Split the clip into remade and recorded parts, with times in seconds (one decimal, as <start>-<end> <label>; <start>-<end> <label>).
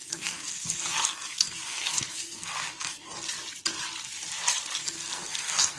0.0-3.1 remade; 3.1-4.8 recorded; 4.8-5.8 remade